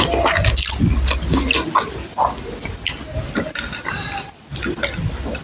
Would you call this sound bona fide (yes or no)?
yes